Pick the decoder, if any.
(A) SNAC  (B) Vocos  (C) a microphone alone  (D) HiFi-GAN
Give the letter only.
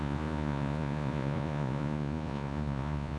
B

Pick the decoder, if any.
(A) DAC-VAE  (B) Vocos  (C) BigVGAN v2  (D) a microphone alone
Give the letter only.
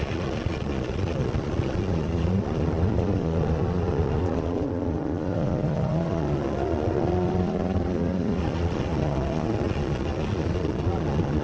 B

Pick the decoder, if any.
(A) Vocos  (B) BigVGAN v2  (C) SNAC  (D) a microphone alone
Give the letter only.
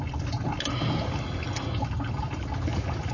D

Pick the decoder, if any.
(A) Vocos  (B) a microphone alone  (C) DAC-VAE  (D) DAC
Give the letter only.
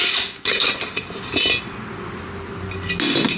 B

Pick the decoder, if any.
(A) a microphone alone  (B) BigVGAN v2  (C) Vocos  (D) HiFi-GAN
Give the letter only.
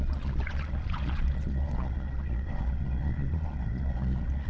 C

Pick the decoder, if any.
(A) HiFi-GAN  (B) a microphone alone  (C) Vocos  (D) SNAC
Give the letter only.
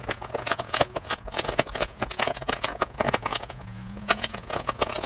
C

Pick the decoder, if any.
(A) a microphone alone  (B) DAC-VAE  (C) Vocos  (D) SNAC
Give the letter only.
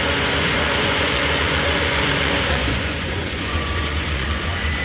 C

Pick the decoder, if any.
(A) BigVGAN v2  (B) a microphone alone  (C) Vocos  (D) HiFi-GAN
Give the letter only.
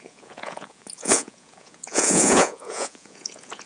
C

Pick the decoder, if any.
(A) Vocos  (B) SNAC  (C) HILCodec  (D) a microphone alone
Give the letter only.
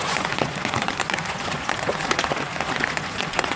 A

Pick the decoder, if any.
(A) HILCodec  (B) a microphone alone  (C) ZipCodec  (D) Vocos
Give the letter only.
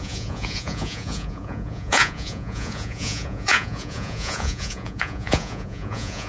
D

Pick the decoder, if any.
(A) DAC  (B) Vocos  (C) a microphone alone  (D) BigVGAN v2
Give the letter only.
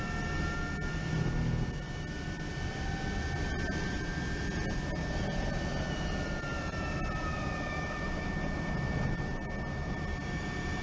C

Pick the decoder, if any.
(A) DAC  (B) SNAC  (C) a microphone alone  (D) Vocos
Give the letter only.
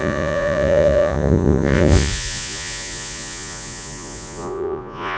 D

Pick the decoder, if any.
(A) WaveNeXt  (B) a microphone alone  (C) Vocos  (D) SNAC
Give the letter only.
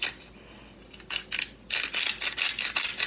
B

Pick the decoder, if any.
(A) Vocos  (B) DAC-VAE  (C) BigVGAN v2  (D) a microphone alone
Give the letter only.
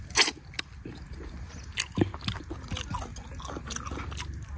D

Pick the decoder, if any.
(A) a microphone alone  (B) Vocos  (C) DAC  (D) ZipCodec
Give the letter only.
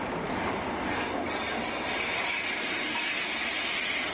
A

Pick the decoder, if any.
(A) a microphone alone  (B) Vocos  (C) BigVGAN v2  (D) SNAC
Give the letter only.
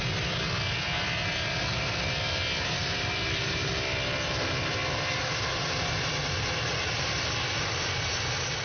A